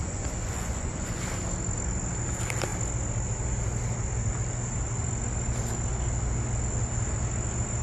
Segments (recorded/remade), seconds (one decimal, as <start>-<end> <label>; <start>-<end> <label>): 0.0-1.2 remade; 1.2-7.8 recorded